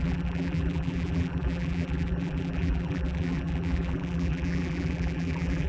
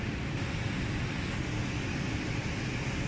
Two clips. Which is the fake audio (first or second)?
first